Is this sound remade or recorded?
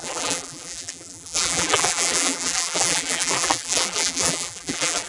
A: remade